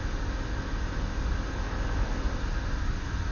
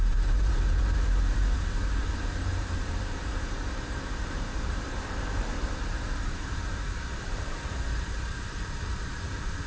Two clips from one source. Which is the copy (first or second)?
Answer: second